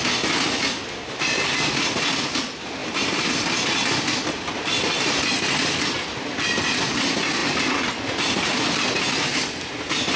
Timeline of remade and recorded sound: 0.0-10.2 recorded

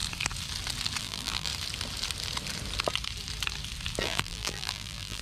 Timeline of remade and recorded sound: 0.0-1.0 recorded; 1.0-1.5 remade; 1.5-4.0 recorded; 4.0-5.2 remade

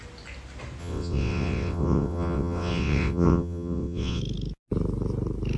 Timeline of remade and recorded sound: 0.0-0.8 recorded; 0.8-4.2 remade; 4.2-5.6 recorded